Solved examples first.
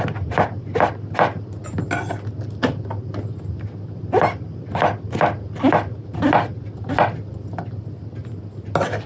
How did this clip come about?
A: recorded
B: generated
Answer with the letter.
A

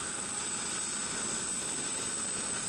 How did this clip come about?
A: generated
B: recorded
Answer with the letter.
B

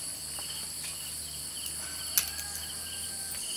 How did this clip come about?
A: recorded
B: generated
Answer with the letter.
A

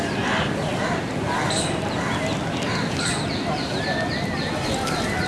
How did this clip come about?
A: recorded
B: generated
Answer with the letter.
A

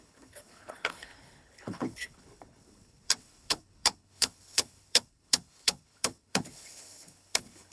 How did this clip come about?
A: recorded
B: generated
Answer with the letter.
B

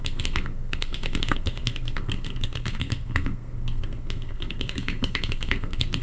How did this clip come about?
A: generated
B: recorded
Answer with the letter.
A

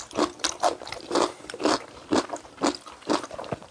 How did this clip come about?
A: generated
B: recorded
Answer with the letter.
A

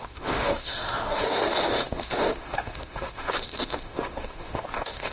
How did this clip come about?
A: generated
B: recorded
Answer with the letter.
A